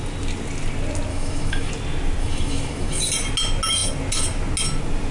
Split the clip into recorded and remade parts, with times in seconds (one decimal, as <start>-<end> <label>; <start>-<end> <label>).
0.0-1.1 recorded; 1.1-1.7 remade; 1.7-2.2 recorded; 2.2-3.0 remade; 3.0-5.1 recorded